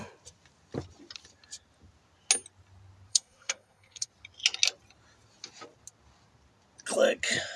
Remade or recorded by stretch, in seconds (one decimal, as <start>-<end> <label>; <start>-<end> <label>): 0.0-3.1 recorded; 3.1-4.1 remade; 4.1-7.6 recorded